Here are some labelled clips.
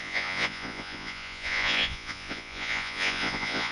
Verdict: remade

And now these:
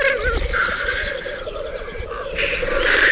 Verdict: recorded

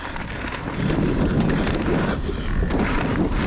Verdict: remade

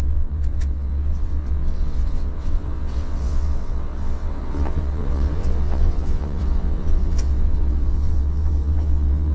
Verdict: remade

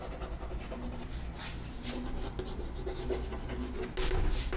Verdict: recorded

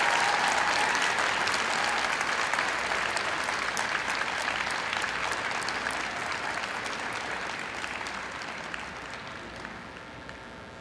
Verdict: recorded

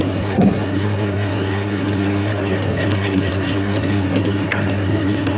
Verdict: remade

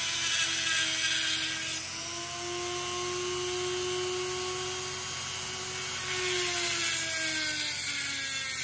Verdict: recorded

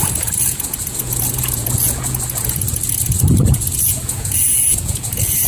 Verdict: remade